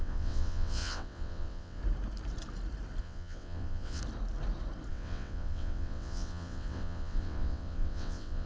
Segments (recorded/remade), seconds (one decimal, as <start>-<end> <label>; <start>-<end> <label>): 0.0-1.8 remade; 1.8-3.0 recorded; 3.0-4.0 remade; 4.0-4.9 recorded; 4.9-8.5 remade